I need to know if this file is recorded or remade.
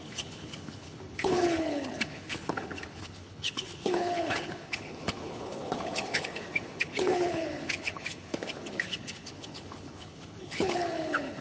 remade